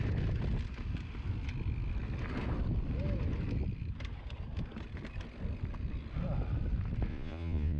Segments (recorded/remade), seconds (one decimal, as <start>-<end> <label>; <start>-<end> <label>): 0.0-7.1 recorded; 7.1-7.8 remade